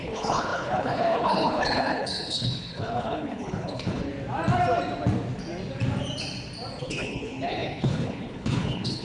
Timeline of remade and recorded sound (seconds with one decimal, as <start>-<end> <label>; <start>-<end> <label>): 0.0-4.1 remade; 4.1-6.8 recorded; 6.8-9.0 remade